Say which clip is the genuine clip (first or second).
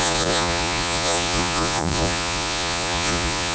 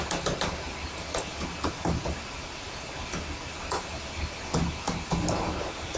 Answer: second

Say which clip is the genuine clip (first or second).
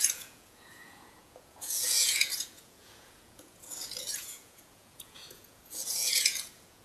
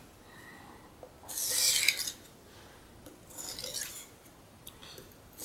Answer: second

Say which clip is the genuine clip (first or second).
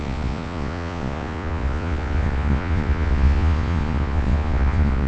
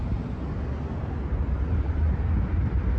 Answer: second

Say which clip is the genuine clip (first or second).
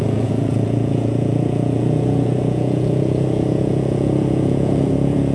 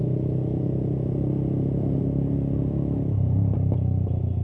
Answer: second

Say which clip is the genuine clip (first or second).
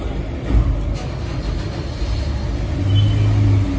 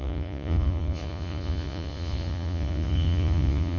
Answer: first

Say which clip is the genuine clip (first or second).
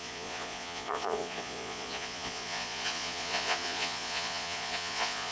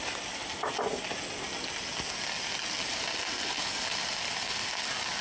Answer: second